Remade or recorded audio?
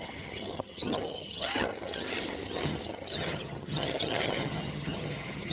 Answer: remade